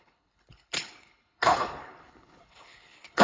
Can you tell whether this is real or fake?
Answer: fake